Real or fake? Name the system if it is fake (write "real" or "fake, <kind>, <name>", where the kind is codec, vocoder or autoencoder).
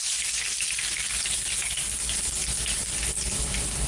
real